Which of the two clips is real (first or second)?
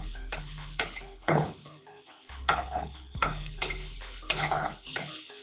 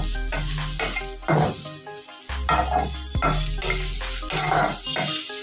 second